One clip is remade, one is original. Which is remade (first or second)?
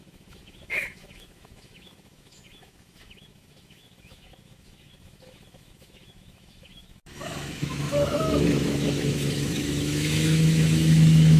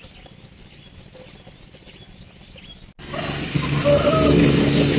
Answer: first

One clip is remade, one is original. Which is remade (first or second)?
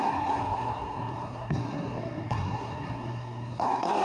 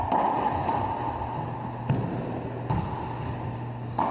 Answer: first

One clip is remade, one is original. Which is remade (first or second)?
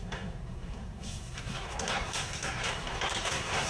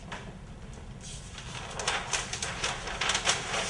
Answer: first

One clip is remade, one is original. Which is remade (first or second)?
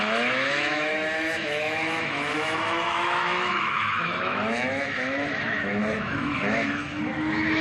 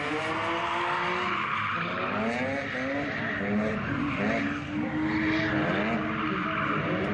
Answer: first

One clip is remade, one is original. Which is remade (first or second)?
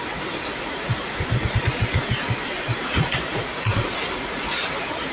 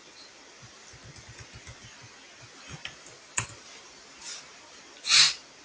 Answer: first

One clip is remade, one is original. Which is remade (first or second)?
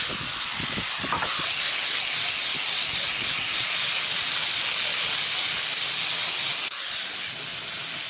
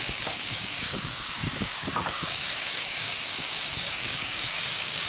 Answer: second